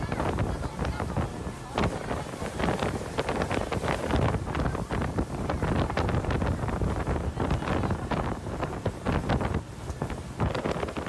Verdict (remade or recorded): recorded